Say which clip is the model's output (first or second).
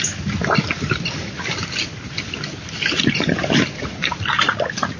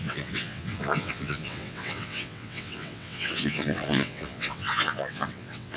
second